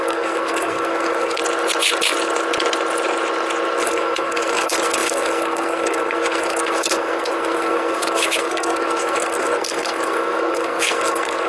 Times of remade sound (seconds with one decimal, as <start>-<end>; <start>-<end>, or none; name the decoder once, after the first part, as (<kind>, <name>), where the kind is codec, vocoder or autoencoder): 0.0-1.4 (codec, SNAC); 3.8-11.5